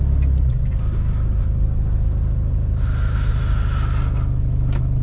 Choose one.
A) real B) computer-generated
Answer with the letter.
A